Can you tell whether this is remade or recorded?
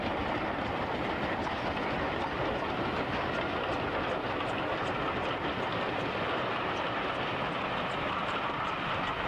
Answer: recorded